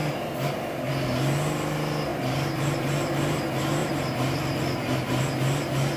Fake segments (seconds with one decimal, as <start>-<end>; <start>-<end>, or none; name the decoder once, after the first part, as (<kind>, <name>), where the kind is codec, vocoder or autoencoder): 2.1-3.4 (vocoder, BigVGAN v2); 3.8-5.2